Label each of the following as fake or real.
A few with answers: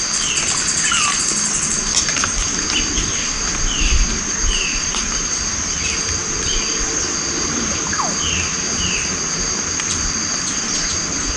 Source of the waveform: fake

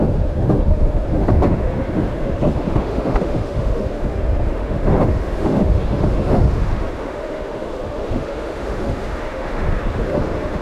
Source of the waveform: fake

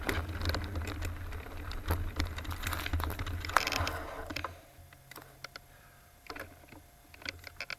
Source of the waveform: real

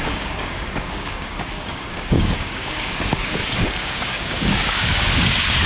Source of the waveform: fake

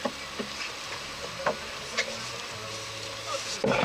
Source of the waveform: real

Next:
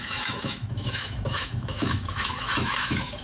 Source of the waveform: fake